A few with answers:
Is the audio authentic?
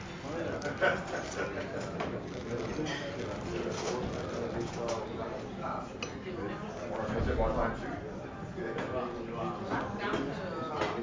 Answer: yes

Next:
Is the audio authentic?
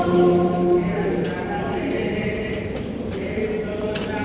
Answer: no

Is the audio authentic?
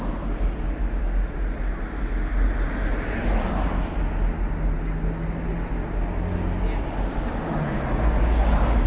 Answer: yes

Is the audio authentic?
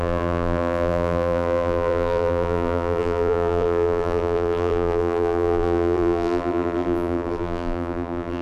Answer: no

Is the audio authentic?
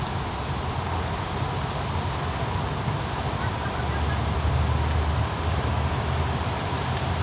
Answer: yes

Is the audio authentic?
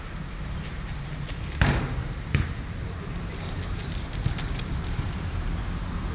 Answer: no